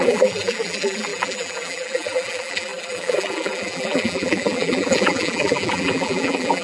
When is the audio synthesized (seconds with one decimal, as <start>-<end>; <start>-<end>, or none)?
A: 0.0-6.6